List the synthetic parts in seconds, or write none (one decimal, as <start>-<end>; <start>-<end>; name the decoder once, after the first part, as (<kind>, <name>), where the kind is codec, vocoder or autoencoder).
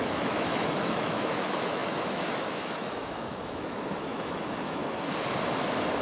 0.0-4.8 (autoencoder, DAC-VAE)